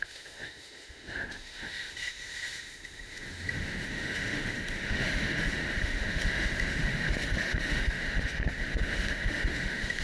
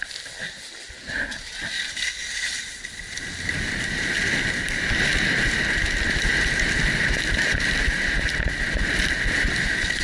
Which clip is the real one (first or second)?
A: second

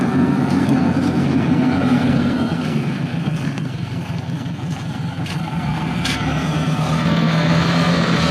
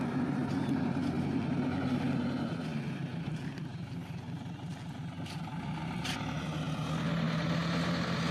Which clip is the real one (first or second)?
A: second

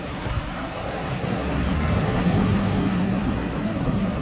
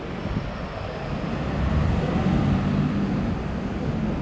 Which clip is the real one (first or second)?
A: second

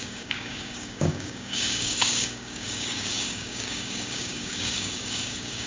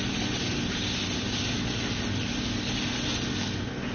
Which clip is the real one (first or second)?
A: second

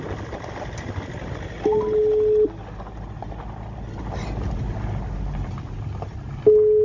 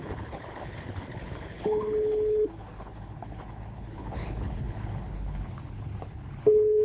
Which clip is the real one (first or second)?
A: first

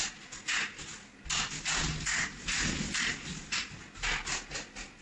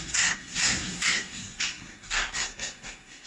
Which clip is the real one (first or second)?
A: first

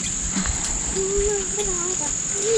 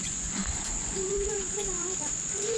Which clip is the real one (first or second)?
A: first